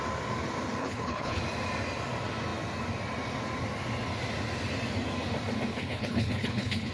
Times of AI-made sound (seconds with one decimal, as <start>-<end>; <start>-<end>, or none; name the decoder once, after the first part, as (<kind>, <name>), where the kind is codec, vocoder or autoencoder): 0.8-1.4 (codec, HILCodec); 5.7-6.9